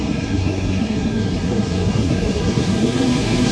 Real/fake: fake